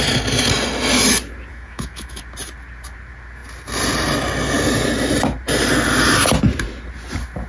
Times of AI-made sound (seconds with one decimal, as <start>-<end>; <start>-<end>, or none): 1.5-2.2